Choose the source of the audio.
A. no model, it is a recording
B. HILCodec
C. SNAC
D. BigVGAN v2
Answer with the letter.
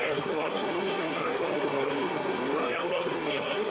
C